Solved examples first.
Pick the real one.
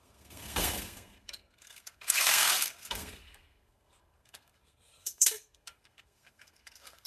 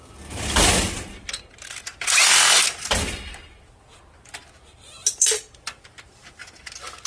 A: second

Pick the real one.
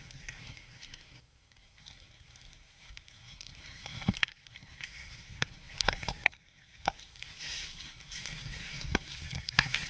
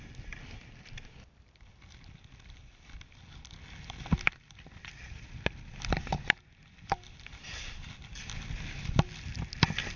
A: second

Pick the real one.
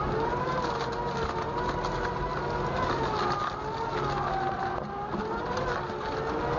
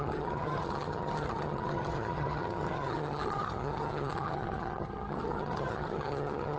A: first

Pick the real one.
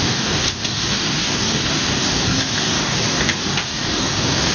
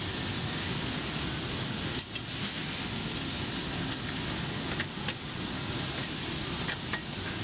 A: second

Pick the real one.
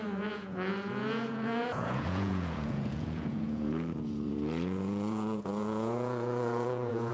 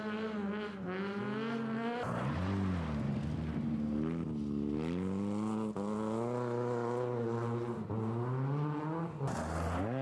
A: second